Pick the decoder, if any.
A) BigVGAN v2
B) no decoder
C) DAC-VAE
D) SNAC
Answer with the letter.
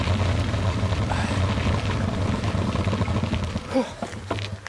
B